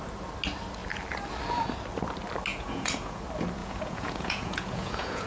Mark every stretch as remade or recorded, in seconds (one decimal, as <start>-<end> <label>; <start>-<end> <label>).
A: 0.0-2.5 recorded; 2.5-3.2 remade; 3.2-3.6 recorded; 3.6-5.3 remade